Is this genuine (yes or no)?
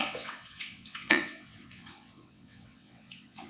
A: no